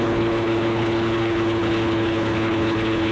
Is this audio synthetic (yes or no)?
yes